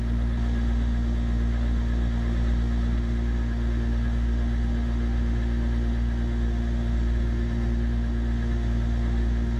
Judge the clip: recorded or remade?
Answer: remade